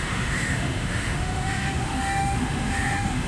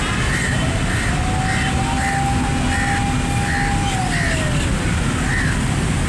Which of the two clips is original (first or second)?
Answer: second